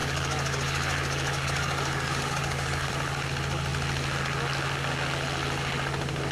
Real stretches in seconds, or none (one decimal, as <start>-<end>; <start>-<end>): 2.9-6.3